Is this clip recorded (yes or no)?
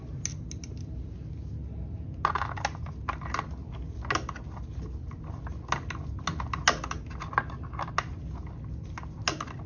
yes